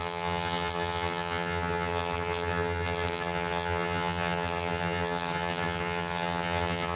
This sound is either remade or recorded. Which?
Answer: remade